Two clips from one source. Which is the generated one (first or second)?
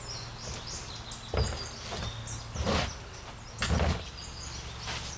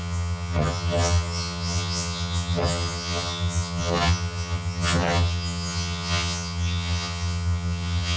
second